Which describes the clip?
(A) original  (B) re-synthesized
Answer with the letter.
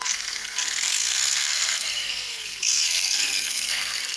B